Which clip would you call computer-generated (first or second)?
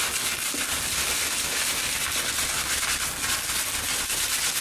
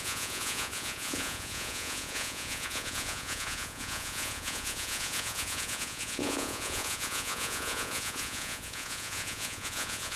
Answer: second